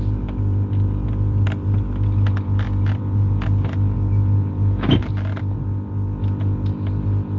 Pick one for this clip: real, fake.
real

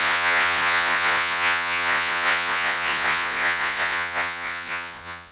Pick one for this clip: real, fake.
fake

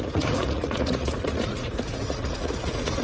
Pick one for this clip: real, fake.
fake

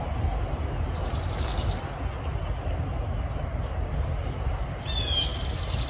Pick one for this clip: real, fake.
real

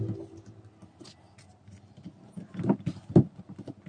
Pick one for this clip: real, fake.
real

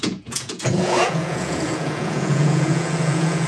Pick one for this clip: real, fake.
fake